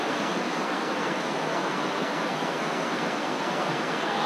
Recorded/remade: remade